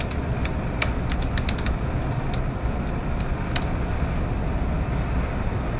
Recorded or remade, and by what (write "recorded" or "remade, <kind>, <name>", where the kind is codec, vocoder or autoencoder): recorded